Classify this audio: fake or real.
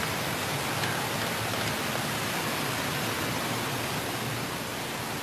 real